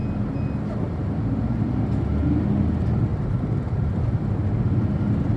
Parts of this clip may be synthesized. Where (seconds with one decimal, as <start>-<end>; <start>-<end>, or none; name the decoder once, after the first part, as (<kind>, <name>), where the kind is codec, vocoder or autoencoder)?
3.1-4.1 (vocoder, BigVGAN v2)

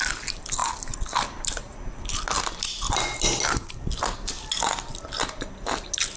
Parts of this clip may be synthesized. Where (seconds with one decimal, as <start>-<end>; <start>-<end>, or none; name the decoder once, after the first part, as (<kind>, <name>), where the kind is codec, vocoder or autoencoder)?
none

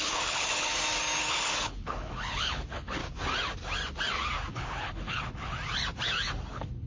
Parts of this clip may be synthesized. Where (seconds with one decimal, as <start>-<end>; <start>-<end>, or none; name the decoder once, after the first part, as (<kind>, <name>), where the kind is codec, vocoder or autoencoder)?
0.0-0.7 (codec, HILCodec); 1.3-3.0; 4.5-5.5; 6.5-6.9

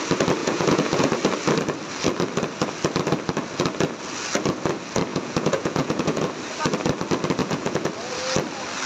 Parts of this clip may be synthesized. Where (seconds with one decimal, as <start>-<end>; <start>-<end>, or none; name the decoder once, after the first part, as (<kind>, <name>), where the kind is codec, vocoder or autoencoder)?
0.4-1.1 (vocoder, Vocos); 5.1-6.3; 7.4-7.9

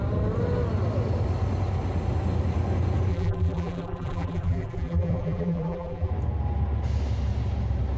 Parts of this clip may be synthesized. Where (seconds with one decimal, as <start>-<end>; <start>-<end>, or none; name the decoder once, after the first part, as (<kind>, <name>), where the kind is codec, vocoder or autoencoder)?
3.1-6.1 (vocoder, BigVGAN v2)